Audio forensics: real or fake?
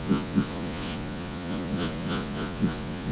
fake